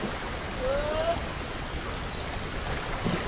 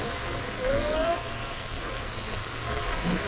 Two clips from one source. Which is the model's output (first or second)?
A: second